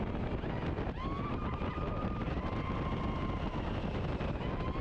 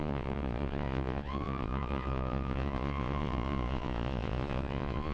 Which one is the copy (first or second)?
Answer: second